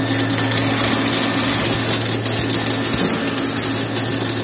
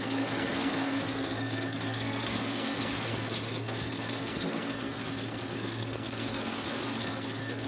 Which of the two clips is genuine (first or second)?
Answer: first